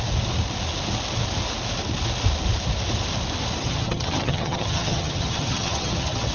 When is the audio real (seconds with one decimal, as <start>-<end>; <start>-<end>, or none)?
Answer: 0.0-3.6